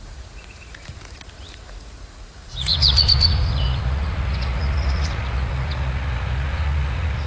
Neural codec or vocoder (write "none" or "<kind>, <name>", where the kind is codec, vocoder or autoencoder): vocoder, Vocos